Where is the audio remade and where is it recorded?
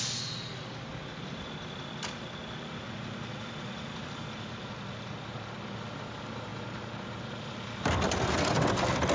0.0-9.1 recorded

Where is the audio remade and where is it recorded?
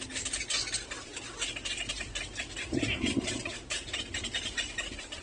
0.0-5.2 recorded